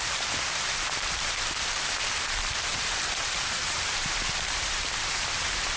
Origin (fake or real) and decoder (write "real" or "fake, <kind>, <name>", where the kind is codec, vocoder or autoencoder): fake, vocoder, BigVGAN v2